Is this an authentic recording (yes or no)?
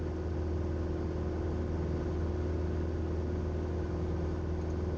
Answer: yes